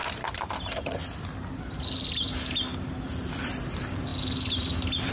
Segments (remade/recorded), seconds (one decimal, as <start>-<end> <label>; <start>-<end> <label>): 0.0-1.8 remade; 1.8-2.7 recorded; 2.7-3.5 remade; 3.5-5.1 recorded

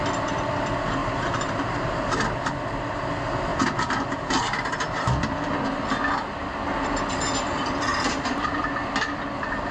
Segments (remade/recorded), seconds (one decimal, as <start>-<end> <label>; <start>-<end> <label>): 0.0-1.0 recorded; 1.0-2.1 remade; 2.1-3.5 recorded; 3.5-4.4 remade; 4.4-7.9 recorded; 7.9-8.6 remade; 8.6-9.7 recorded

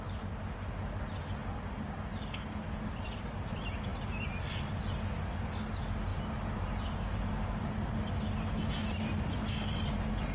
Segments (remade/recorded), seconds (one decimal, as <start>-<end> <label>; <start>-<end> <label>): 0.0-3.9 recorded; 3.9-4.8 remade; 4.8-6.1 recorded; 6.1-7.2 remade; 7.2-10.3 recorded

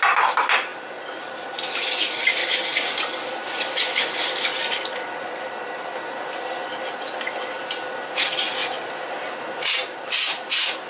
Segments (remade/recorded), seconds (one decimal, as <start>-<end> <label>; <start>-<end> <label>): 0.0-2.4 remade; 2.4-4.4 recorded; 4.4-8.6 remade; 8.6-9.7 recorded; 9.7-10.9 remade

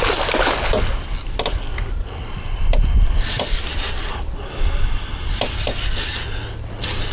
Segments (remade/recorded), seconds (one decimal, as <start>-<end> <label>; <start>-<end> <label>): 0.0-4.1 recorded; 4.1-5.4 remade; 5.4-7.1 recorded